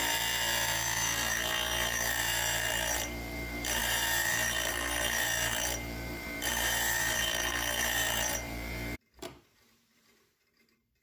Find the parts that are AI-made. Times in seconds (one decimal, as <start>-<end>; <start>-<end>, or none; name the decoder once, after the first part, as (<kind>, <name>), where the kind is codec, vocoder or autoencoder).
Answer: 0.0-11.0 (vocoder, BigVGAN v2)